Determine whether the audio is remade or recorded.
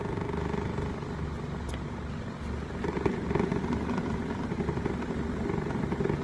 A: recorded